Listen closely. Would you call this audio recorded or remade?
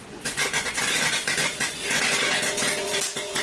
remade